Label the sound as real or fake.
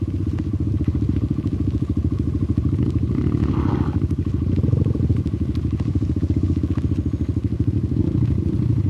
real